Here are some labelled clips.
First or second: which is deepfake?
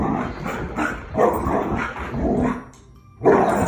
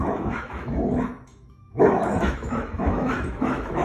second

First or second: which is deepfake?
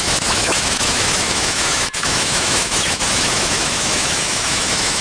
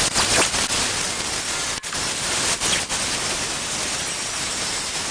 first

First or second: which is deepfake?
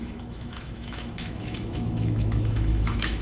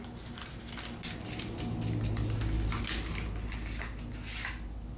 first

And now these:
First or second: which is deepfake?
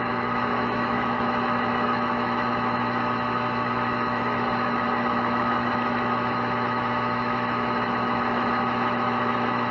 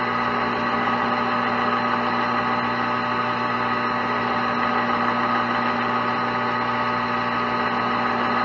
first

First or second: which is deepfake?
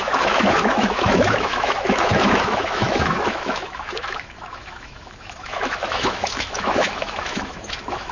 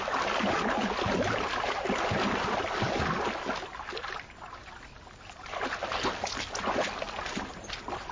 first